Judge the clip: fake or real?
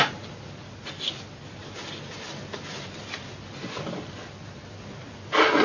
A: real